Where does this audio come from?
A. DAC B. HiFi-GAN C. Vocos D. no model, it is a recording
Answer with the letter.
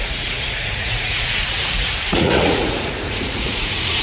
C